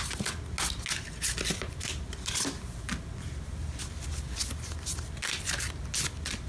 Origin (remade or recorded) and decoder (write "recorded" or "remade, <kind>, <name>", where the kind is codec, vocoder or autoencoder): recorded